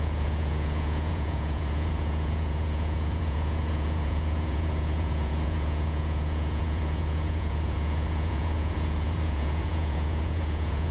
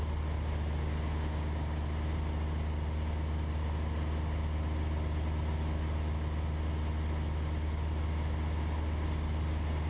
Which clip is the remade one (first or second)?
first